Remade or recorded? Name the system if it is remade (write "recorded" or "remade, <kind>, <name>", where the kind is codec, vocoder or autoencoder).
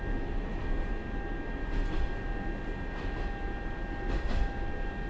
recorded